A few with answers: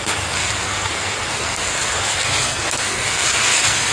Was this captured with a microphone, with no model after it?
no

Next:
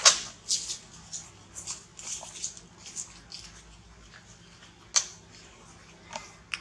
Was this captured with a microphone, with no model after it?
yes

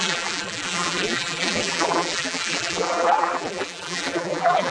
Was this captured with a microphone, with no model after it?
no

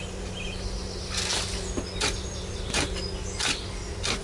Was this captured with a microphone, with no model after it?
yes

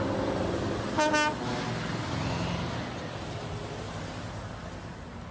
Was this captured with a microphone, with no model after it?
yes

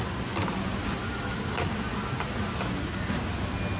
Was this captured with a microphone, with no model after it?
yes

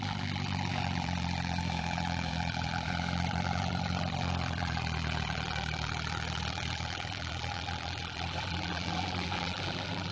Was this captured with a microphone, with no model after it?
no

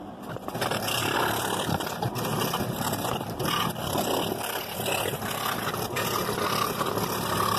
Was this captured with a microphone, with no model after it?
yes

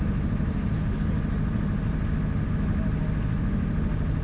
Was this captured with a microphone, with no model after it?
yes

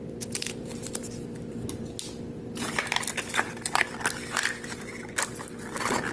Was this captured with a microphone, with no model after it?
yes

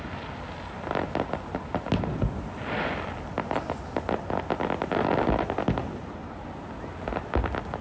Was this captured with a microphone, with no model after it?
yes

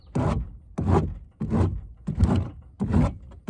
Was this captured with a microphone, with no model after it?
yes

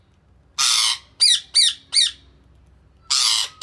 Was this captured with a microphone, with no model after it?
yes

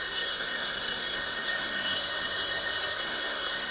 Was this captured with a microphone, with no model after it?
no